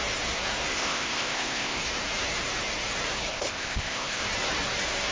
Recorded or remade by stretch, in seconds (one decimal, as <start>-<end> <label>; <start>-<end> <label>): 0.0-0.7 recorded; 0.7-1.8 remade; 1.8-3.3 recorded; 3.3-4.2 remade; 4.2-5.1 recorded